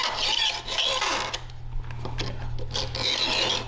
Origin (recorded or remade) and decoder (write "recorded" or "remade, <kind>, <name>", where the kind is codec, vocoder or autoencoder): recorded